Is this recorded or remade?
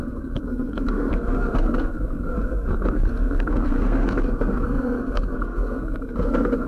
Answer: remade